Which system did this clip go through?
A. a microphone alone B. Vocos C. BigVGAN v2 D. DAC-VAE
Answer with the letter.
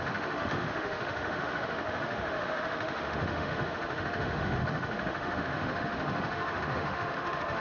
D